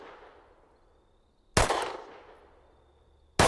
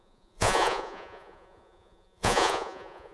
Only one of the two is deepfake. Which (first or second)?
second